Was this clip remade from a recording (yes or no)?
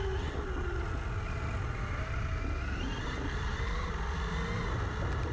no